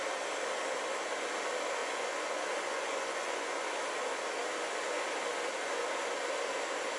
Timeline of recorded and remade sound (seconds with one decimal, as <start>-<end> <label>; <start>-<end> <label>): 0.0-1.8 recorded; 1.8-3.8 remade; 3.8-7.0 recorded